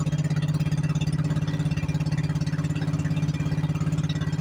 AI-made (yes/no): no